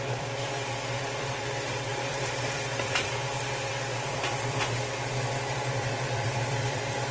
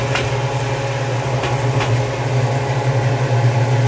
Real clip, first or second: second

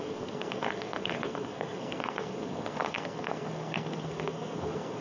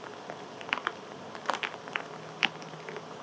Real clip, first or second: second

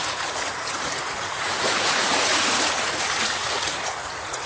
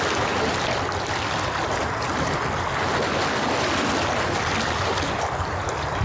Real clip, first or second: second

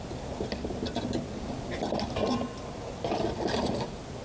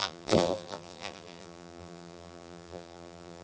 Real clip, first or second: first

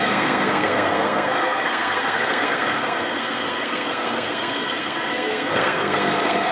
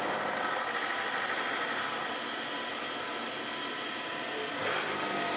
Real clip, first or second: second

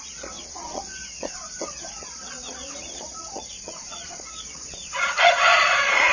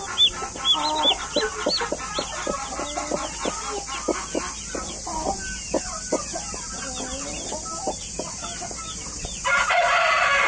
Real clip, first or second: second